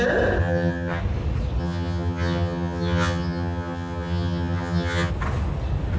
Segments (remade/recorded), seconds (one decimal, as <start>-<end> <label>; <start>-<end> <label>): 0.0-0.4 recorded; 0.4-1.0 remade; 1.0-1.6 recorded; 1.6-5.1 remade; 5.1-6.0 recorded